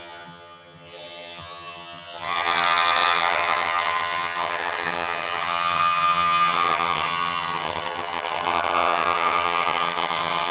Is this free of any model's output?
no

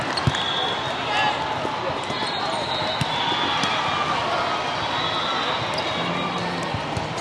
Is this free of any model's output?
yes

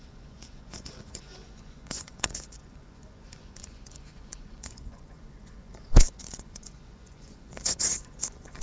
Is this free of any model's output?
no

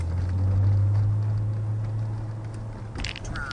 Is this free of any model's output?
yes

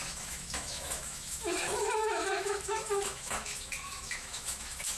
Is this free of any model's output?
no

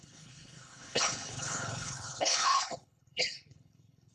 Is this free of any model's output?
no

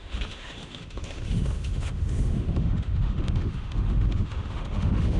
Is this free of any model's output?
no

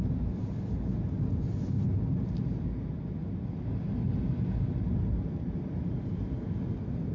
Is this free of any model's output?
yes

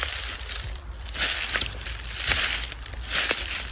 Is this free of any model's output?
no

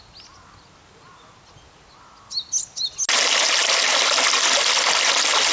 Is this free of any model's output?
yes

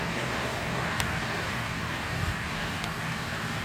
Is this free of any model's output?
no